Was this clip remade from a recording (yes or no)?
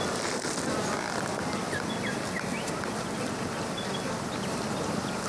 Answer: no